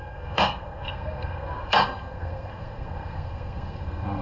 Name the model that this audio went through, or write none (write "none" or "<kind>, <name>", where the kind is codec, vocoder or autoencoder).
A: codec, SNAC